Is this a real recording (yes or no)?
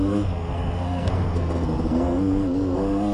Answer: no